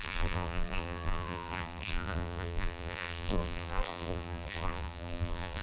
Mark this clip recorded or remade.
remade